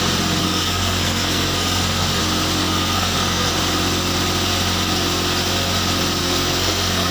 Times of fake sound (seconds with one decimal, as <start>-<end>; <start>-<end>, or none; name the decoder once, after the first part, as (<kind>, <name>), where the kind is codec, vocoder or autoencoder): 0.4-2.2 (codec, SNAC); 2.6-3.5; 6.2-7.1